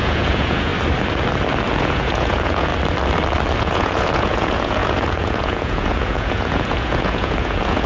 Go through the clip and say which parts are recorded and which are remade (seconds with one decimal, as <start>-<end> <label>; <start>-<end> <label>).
0.0-0.7 remade; 0.7-1.8 recorded; 1.8-2.7 remade; 2.7-3.6 recorded; 3.6-7.9 remade